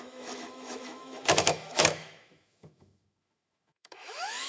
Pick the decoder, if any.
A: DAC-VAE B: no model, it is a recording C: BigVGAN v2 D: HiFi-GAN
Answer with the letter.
A